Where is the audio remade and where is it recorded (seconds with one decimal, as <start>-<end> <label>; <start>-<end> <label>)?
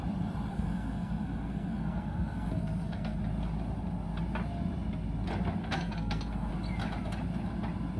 0.0-0.5 recorded; 0.5-3.2 remade; 3.2-5.6 recorded; 5.6-6.5 remade; 6.5-8.0 recorded